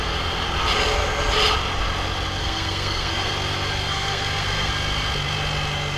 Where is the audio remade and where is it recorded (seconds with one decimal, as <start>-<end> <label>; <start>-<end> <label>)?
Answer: 0.0-2.4 recorded; 2.4-3.3 remade; 3.3-3.8 recorded; 3.8-4.7 remade; 4.7-6.0 recorded